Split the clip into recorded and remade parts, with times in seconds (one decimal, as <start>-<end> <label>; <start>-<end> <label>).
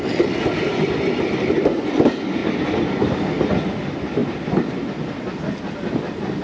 0.0-6.4 recorded